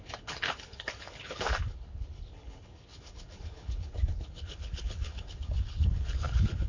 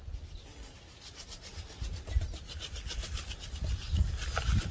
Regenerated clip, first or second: first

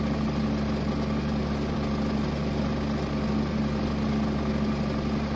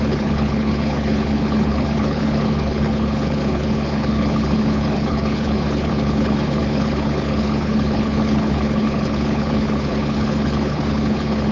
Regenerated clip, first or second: second